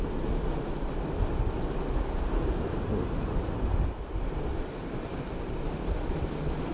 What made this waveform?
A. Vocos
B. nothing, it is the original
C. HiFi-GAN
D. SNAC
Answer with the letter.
B